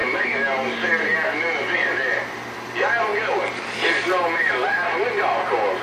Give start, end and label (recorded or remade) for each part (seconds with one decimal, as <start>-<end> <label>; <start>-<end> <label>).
0.0-5.8 recorded